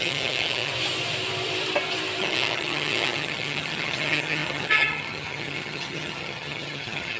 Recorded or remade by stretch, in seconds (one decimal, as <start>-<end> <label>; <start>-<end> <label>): 0.0-0.7 remade; 0.7-2.2 recorded; 2.2-7.2 remade